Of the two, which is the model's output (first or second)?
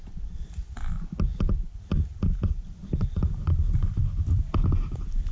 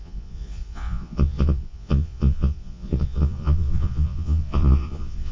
second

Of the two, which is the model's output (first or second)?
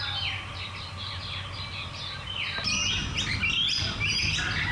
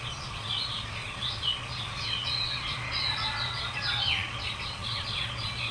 second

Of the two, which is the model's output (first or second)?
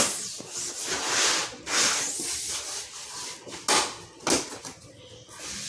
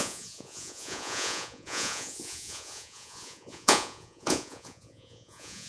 second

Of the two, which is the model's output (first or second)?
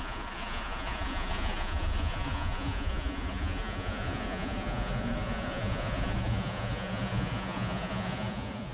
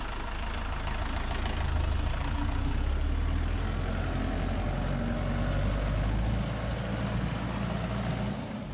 first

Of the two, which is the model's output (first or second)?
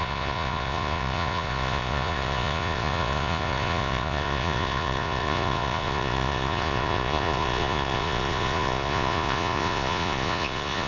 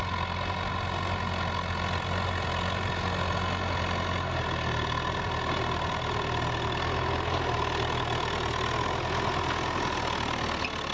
first